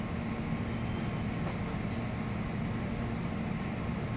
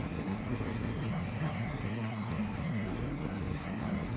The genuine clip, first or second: first